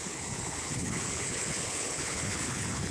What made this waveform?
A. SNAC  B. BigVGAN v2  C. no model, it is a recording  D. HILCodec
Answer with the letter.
D